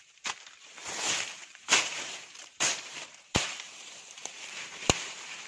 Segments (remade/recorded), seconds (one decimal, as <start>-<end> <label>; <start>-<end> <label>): 0.0-5.5 remade